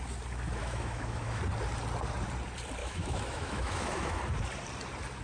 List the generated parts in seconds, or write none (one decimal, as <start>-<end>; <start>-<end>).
0.6-1.4; 2.8-4.2